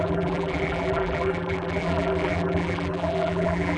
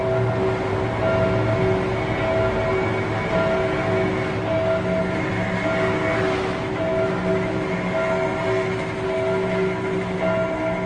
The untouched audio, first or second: second